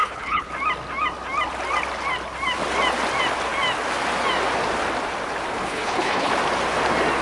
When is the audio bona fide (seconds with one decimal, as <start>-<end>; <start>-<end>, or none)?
0.5-5.5; 6.3-7.2